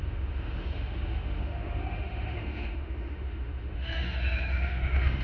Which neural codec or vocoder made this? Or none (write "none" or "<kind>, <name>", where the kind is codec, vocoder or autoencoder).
autoencoder, DAC-VAE